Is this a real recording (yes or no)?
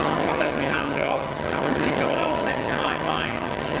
no